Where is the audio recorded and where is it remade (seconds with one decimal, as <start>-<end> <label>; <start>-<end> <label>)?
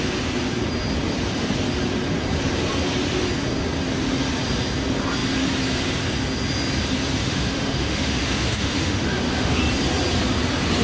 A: 0.0-7.2 recorded; 7.2-9.6 remade; 9.6-10.8 recorded